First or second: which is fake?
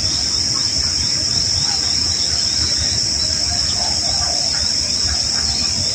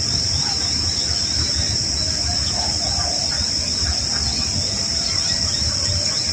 first